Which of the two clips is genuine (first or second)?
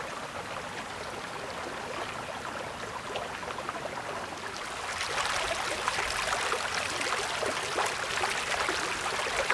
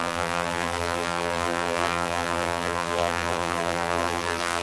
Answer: first